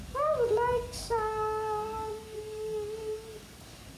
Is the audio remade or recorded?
remade